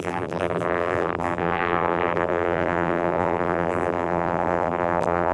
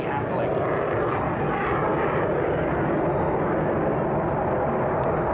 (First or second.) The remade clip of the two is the first